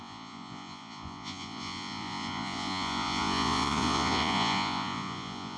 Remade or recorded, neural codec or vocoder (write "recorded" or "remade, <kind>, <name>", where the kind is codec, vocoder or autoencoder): remade, vocoder, Vocos